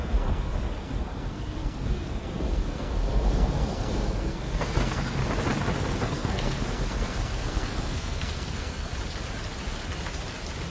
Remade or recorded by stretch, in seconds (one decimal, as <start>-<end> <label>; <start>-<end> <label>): 0.0-5.2 remade; 5.2-5.8 recorded; 5.8-8.9 remade; 8.9-10.7 recorded